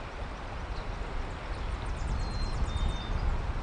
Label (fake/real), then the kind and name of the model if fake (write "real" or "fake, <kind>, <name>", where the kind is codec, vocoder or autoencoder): real